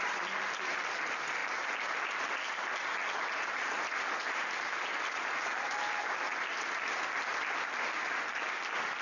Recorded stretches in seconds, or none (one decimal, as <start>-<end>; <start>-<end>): 0.0-9.0